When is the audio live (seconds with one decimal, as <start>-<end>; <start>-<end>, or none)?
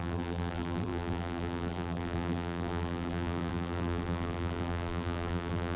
none